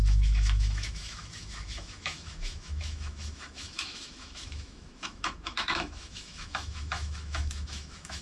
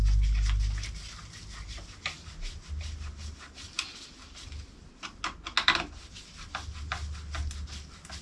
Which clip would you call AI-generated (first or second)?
first